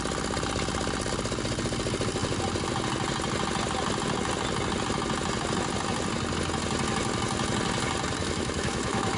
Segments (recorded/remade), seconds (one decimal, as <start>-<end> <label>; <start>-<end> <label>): 0.0-8.2 recorded; 8.2-9.2 remade